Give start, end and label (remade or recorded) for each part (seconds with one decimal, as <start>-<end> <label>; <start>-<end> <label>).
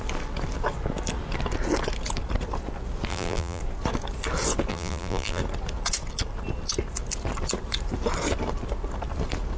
0.0-3.1 recorded; 3.1-3.6 remade; 3.6-4.7 recorded; 4.7-5.4 remade; 5.4-9.6 recorded